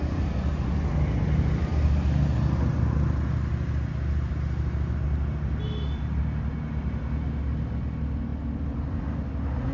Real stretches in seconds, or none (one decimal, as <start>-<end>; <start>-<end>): 0.0-9.7